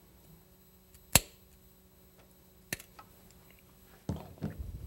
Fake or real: real